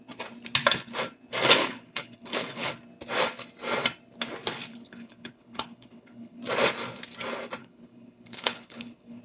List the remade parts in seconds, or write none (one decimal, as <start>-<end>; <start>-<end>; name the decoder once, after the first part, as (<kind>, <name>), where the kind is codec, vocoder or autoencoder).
1.6-2.7 (codec, HILCodec); 4.7-6.4; 7.6-9.2